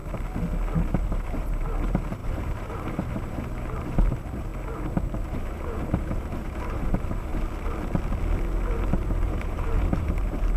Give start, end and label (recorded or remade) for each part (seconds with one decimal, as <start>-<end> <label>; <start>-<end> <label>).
0.0-0.8 recorded; 0.8-4.5 remade; 4.5-5.3 recorded; 5.3-7.3 remade; 7.3-8.9 recorded; 8.9-10.6 remade